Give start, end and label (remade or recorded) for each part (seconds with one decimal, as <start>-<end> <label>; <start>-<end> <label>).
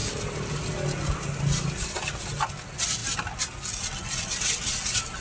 0.0-5.2 recorded